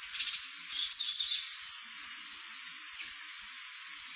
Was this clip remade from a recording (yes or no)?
no